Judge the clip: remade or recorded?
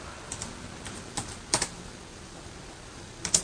recorded